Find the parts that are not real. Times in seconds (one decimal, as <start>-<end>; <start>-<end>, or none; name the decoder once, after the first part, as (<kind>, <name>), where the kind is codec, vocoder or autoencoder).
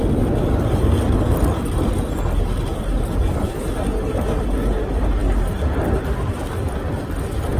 none